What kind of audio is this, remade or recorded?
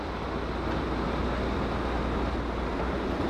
recorded